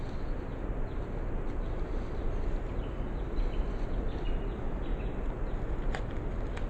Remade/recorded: recorded